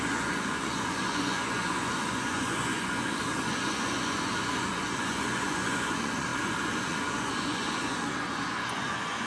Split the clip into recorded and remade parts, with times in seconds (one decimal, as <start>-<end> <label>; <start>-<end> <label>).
0.0-9.3 remade